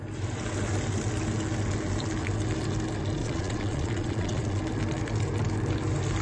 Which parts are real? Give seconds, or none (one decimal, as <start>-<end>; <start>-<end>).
0.0-3.2; 4.6-6.2